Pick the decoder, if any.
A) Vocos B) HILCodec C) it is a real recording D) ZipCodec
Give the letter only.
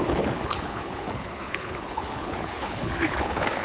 B